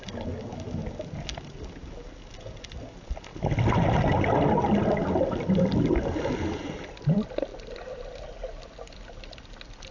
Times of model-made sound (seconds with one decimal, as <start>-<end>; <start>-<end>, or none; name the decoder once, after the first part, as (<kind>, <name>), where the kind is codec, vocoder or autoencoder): none